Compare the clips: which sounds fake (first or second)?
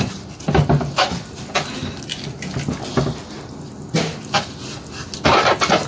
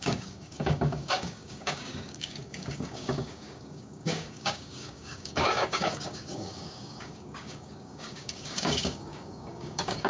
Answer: second